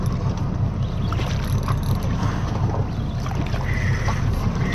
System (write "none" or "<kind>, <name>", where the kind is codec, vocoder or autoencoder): none